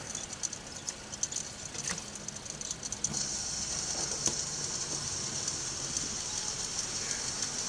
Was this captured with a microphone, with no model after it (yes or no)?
yes